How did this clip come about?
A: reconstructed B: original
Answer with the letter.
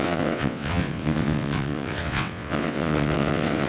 A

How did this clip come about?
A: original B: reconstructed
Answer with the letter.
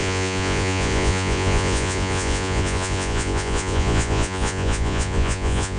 B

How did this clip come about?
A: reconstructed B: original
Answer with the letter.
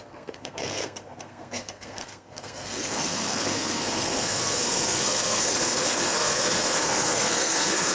A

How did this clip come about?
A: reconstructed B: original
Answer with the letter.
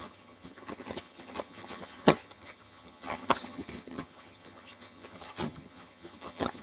A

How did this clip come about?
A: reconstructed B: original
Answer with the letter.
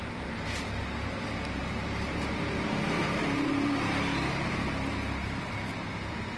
A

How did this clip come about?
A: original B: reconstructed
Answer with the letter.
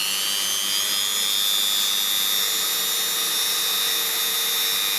A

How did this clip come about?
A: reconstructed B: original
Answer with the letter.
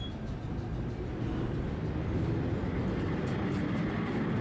B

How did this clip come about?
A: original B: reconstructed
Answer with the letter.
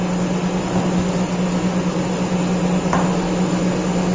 A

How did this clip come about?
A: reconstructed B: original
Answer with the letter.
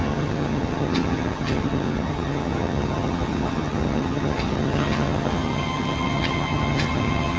A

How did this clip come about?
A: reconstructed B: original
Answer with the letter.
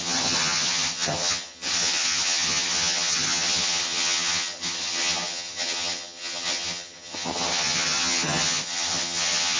A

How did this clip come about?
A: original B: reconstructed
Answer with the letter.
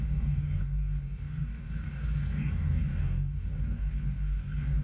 B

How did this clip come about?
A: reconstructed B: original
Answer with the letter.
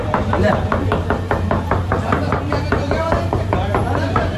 A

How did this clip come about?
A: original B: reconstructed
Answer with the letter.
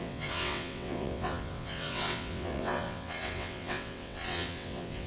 B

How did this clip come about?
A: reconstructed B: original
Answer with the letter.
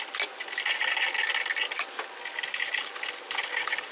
B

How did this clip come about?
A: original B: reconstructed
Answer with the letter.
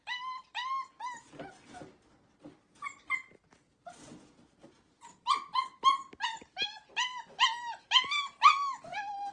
A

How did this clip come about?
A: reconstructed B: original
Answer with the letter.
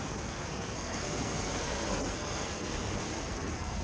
A